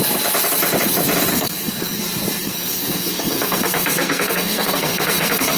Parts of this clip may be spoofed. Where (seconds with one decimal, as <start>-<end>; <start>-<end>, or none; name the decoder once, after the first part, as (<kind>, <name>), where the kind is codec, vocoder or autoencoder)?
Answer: 1.3-2.0 (codec, SNAC); 2.4-5.6